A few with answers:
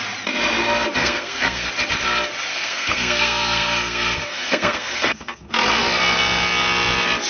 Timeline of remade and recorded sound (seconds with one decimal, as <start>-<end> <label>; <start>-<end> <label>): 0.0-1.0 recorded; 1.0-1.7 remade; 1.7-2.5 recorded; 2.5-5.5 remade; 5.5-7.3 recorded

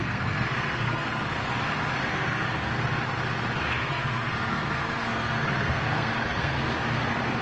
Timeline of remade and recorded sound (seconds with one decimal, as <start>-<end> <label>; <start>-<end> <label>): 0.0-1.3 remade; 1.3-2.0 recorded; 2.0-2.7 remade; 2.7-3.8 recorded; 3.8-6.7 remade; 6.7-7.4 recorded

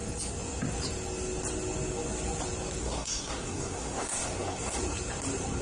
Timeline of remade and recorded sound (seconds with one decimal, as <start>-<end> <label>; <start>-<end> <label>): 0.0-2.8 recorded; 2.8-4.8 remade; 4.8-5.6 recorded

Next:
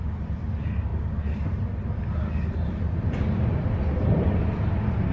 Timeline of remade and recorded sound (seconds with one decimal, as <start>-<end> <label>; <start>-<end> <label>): 0.0-5.1 recorded

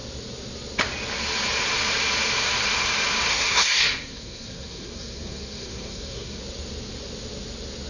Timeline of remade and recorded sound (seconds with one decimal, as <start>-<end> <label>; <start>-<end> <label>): 0.0-3.3 recorded; 3.3-6.4 remade; 6.4-7.9 recorded

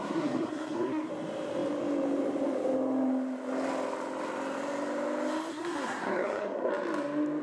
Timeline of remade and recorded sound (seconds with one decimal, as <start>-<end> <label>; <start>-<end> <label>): 0.0-1.1 remade; 1.1-5.5 recorded; 5.5-6.7 remade; 6.7-7.4 recorded